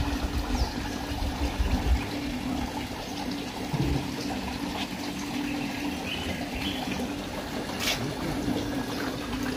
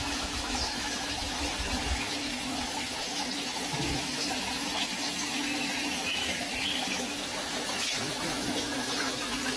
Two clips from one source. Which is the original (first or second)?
first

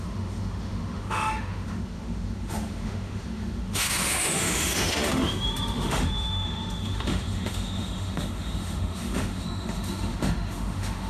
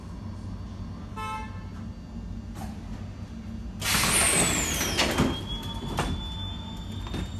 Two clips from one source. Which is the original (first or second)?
second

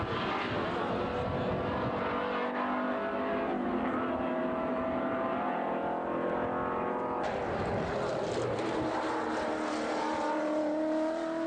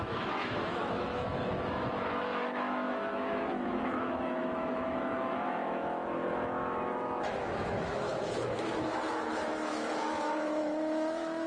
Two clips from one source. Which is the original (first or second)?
first